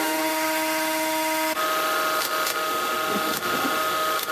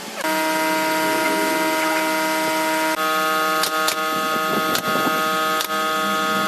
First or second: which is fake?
first